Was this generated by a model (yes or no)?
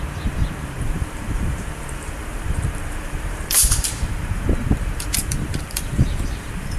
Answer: yes